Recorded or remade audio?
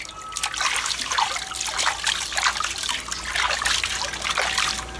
recorded